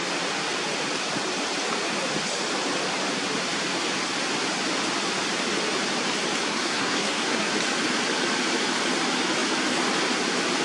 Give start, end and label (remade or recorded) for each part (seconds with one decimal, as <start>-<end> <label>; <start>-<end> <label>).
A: 0.0-6.4 recorded; 6.4-7.5 remade; 7.5-10.6 recorded